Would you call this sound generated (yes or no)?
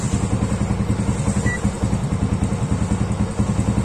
no